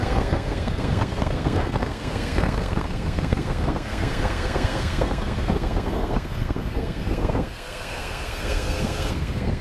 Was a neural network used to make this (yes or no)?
yes